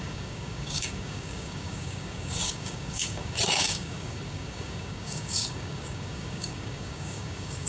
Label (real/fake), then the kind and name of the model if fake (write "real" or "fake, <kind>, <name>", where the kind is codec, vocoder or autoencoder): fake, codec, DAC